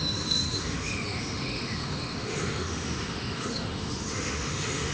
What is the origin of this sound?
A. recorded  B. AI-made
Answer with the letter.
B